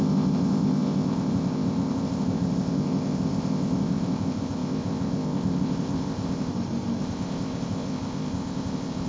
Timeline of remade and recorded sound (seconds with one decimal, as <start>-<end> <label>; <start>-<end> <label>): 0.0-6.5 remade; 6.5-7.0 recorded; 7.0-9.1 remade